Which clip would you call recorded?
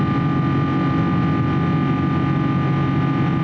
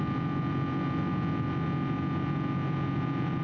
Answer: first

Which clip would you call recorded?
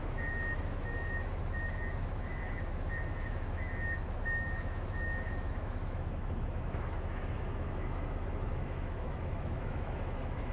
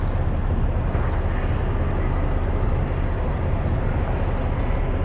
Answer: second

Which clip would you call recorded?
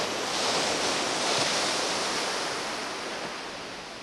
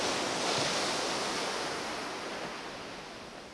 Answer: second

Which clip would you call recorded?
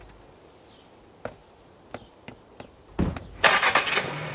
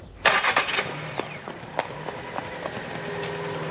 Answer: first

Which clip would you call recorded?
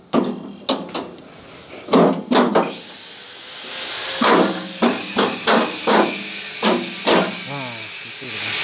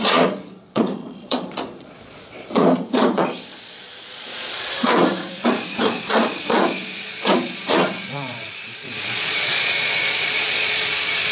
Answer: first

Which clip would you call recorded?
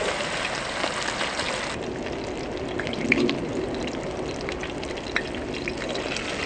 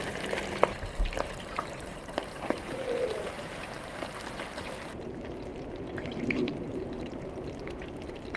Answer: first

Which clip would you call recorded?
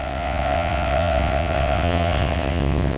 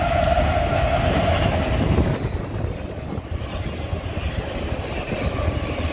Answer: second